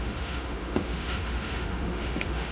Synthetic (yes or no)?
yes